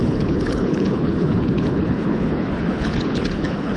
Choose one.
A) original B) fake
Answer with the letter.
B